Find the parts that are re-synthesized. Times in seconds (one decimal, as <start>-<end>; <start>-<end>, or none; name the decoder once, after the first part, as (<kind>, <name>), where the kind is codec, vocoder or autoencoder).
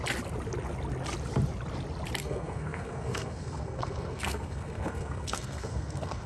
2.2-6.3 (codec, SNAC)